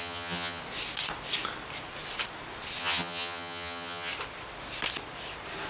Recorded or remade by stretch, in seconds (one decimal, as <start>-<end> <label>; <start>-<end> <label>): 0.0-0.6 remade; 0.6-2.8 recorded; 2.8-4.1 remade; 4.1-5.7 recorded